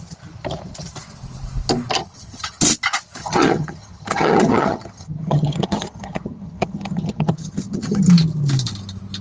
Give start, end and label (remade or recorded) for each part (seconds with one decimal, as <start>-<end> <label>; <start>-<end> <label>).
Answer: 0.0-2.0 recorded; 2.0-2.6 remade; 2.6-3.2 recorded; 3.2-8.1 remade; 8.1-9.2 recorded